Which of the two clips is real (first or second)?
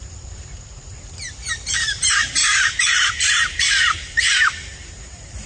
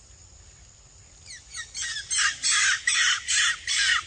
second